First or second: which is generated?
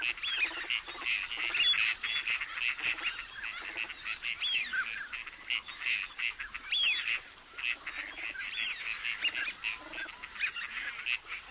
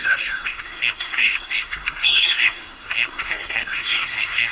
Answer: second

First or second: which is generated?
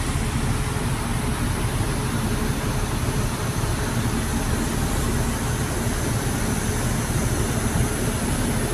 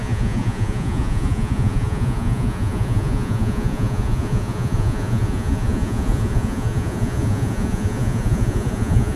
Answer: second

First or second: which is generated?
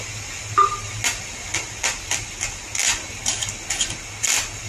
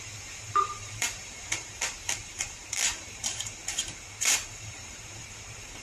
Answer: second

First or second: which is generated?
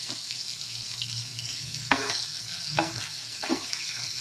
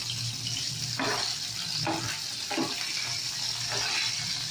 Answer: first